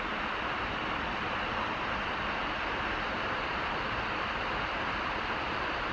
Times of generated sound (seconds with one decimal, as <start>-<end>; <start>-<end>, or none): 0.8-1.4